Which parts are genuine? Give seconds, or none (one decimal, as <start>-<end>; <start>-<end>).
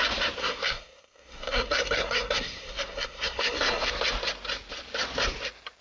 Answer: 0.0-0.4; 3.9-5.8